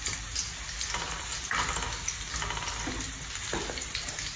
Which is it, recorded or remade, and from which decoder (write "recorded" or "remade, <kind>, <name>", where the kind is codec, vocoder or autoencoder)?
recorded